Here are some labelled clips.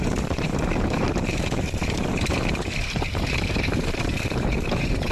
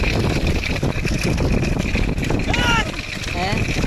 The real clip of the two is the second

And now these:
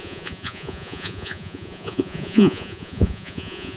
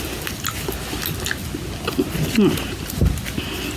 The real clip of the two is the second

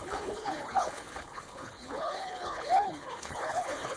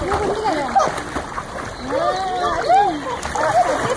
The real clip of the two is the second